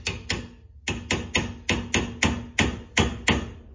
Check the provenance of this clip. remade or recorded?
recorded